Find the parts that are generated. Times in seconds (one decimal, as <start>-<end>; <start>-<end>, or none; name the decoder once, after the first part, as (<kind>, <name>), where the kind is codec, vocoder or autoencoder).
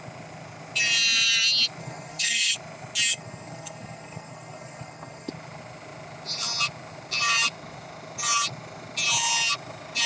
1.8-2.5 (codec, SNAC); 3.1-5.3